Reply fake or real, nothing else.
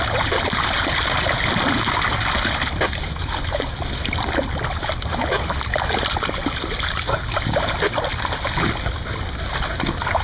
real